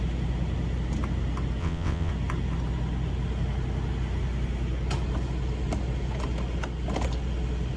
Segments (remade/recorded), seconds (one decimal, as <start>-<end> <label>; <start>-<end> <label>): 0.0-1.6 recorded; 1.6-2.1 remade; 2.1-7.8 recorded